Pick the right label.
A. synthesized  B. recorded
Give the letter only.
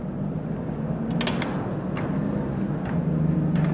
B